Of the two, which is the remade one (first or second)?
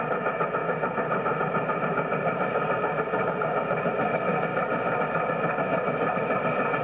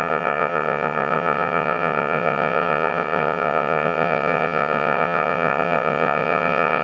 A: second